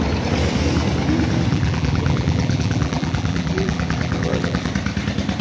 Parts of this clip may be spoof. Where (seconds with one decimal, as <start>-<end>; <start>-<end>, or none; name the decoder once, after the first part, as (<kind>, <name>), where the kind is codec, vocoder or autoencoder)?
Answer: 1.5-4.7 (vocoder, BigVGAN v2)